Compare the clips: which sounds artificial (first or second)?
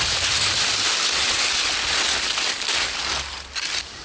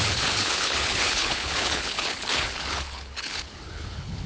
second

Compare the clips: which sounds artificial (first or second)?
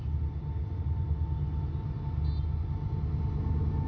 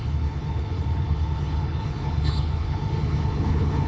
second